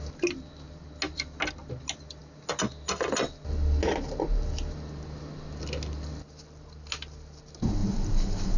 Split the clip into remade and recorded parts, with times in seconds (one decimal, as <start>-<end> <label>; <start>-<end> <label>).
0.0-7.8 recorded; 7.8-8.6 remade